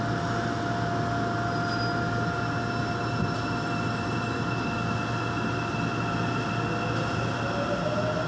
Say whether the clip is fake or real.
real